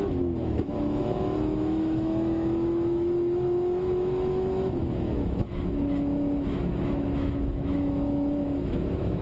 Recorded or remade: remade